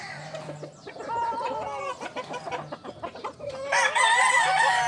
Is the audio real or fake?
real